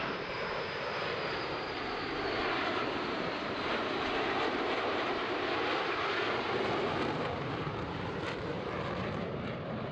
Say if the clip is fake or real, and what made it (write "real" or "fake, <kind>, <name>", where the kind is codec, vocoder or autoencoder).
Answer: fake, vocoder, BigVGAN v2